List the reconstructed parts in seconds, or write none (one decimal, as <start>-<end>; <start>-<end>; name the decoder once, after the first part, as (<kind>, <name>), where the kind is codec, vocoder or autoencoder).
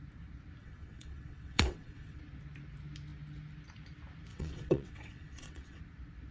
0.6-2.2 (vocoder, WaveNeXt); 4.3-5.8